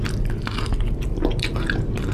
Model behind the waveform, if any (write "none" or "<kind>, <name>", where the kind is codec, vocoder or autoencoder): none